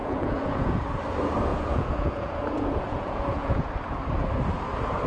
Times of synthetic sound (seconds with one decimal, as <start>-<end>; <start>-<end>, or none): 0.0-1.0; 1.5-3.7